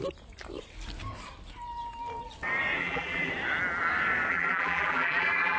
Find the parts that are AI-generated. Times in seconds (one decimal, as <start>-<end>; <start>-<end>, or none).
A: 2.8-3.3; 4.3-5.6